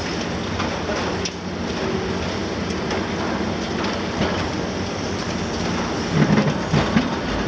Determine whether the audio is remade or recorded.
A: recorded